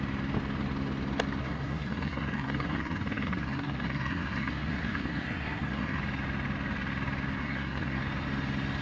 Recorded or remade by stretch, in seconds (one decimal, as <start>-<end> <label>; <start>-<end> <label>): 0.0-1.4 recorded; 1.4-6.0 remade; 6.0-7.4 recorded; 7.4-8.0 remade; 8.0-8.8 recorded